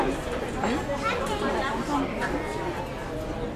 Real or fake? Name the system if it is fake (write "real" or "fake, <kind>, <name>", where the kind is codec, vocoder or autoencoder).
real